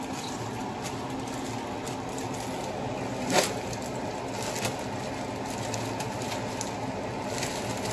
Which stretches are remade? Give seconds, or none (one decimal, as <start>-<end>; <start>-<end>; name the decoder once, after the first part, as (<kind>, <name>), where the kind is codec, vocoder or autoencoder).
none